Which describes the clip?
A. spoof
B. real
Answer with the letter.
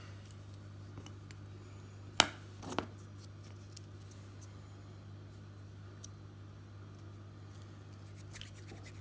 B